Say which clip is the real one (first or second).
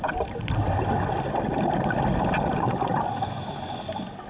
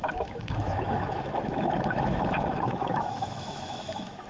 first